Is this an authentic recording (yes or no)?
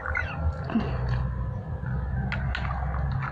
yes